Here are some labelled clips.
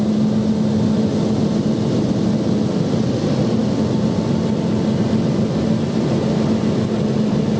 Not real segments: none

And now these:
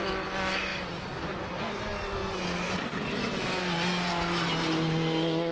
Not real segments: none

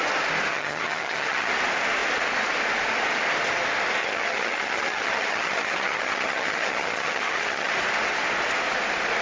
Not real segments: 0.5-1.5 (vocoder, HiFi-GAN); 4.0-7.7

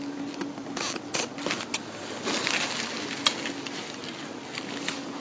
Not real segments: none

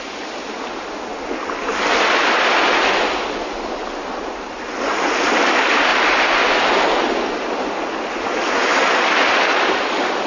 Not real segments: none

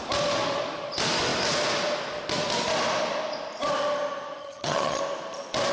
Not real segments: 4.4-5.0 (vocoder, HiFi-GAN)